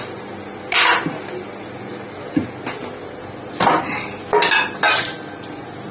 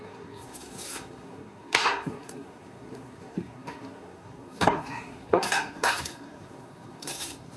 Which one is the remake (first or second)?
second